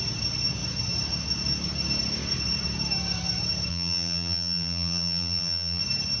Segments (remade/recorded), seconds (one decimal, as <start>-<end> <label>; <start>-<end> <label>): 0.0-3.7 recorded; 3.7-5.8 remade; 5.8-6.2 recorded